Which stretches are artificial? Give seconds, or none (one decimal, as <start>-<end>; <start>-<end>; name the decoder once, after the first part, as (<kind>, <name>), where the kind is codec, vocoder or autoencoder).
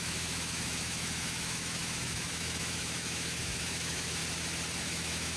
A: 0.0-4.2 (autoencoder, DAC-VAE); 4.8-5.4